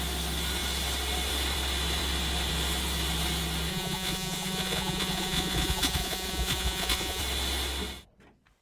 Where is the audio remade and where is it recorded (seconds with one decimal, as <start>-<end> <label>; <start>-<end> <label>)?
0.0-3.7 recorded; 3.7-7.2 remade; 7.2-8.6 recorded